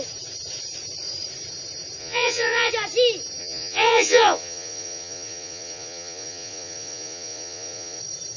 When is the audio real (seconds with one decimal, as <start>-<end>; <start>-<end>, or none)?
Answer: 0.0-2.0; 2.7-3.4; 8.0-8.4